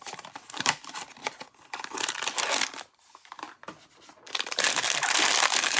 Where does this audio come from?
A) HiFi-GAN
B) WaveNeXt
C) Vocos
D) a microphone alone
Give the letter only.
D